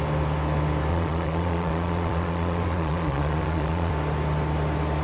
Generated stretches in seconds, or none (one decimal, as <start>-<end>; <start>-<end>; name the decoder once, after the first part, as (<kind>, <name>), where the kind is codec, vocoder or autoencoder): 0.9-3.9 (vocoder, Vocos)